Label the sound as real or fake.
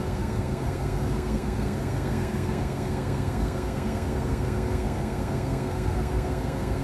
fake